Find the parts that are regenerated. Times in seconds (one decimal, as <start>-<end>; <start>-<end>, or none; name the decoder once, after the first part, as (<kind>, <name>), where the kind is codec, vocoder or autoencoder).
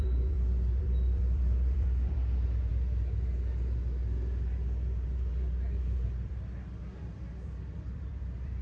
0.0-2.7 (vocoder, BigVGAN v2); 7.0-8.6